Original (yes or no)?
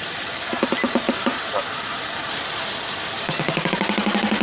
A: no